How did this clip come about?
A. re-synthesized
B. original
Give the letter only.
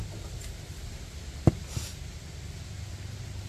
B